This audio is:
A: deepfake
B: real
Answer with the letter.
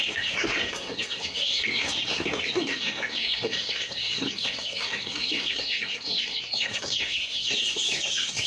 A